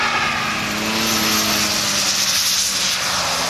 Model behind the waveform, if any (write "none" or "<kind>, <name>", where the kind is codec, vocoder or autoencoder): none